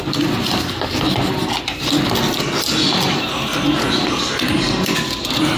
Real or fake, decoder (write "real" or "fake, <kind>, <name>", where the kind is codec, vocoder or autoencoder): real